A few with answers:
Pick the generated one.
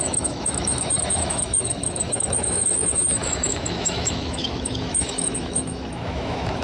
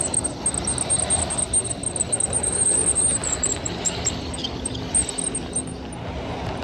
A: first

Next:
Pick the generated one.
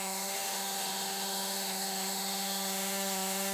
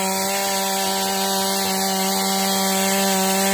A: first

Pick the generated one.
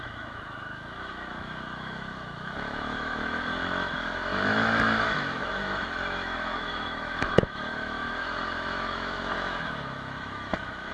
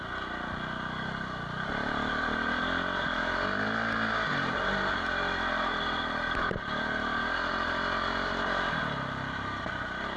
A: first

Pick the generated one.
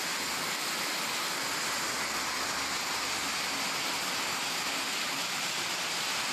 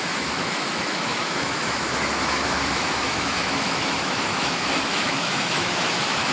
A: second